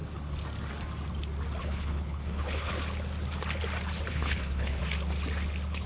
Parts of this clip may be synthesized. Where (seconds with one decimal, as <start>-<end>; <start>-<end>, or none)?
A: 1.6-2.7; 4.1-4.8